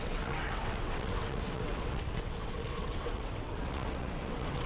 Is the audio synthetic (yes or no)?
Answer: yes